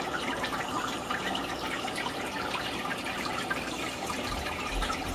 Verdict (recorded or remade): remade